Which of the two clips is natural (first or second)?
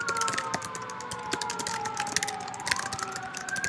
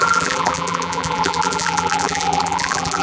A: first